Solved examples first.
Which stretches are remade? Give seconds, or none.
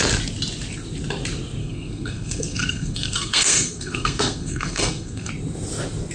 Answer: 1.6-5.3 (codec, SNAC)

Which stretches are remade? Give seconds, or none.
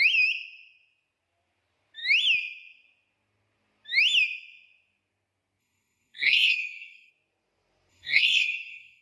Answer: 5.6-7.1 (codec, SNAC); 7.9-9.0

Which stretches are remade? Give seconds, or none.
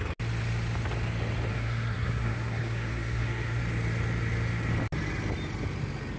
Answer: 1.5-3.6 (codec, SNAC)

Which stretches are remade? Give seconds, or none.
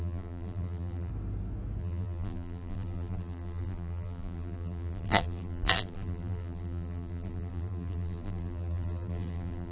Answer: 0.0-1.1 (vocoder, BigVGAN v2); 1.8-9.7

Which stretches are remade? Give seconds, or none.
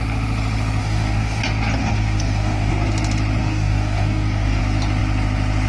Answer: 0.8-1.4 (codec, DAC); 1.8-2.7; 3.4-4.6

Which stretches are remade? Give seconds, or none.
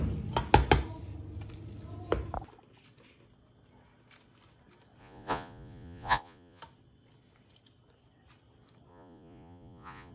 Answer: 5.0-6.6 (vocoder, Vocos); 8.9-10.1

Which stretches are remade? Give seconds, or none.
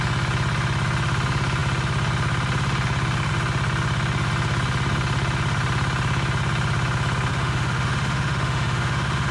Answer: 7.3-9.3 (autoencoder, DAC-VAE)